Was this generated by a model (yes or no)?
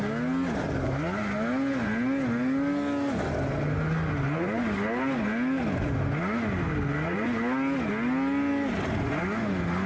no